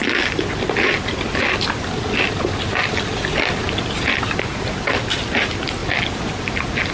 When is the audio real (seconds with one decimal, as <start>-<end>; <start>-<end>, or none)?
0.0-6.9